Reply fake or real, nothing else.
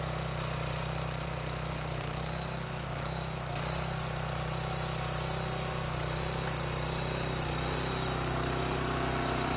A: fake